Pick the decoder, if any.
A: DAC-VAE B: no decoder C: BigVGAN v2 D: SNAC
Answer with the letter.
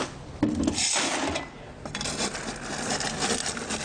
B